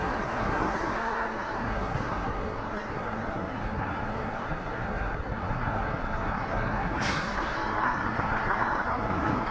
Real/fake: fake